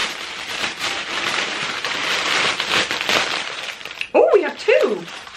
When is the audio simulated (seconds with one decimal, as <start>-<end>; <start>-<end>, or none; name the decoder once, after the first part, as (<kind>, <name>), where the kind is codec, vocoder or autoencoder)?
0.0-2.0 (vocoder, BigVGAN v2); 3.4-5.4